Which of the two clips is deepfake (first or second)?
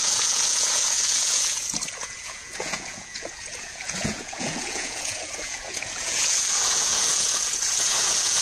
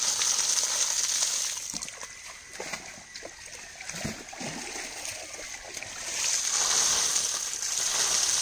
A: first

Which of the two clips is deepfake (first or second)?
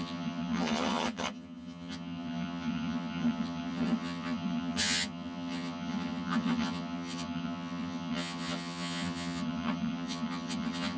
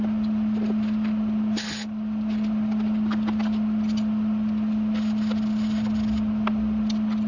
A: first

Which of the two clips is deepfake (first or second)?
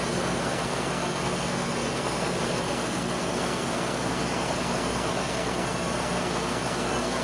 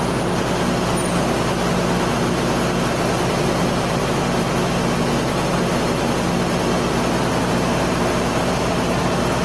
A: first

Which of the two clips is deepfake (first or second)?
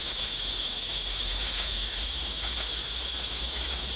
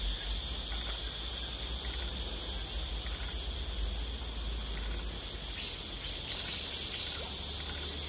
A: first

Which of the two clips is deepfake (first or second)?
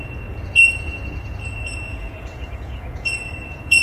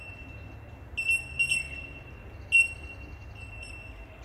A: first